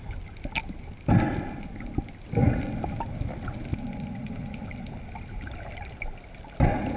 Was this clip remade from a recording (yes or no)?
no